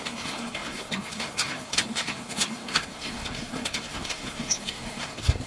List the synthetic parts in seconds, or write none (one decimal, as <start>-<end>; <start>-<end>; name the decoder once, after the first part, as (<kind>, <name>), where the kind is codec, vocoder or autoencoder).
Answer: 0.0-5.5 (codec, SNAC)